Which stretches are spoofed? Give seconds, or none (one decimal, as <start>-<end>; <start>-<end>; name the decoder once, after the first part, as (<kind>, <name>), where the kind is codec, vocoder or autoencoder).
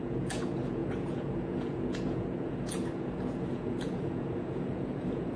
0.0-5.4 (vocoder, Vocos)